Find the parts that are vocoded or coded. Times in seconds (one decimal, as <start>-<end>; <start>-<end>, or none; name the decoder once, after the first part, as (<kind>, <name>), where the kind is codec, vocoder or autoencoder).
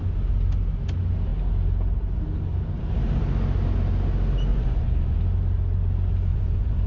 4.5-5.2 (vocoder, Vocos); 6.3-6.9